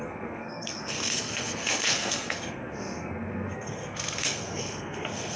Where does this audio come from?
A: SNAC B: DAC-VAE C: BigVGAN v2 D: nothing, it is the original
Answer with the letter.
A